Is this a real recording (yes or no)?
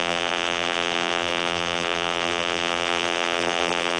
no